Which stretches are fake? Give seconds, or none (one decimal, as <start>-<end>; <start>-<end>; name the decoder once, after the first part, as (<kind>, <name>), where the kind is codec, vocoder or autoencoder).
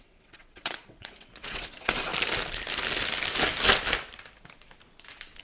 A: 0.0-2.1 (vocoder, WaveNeXt)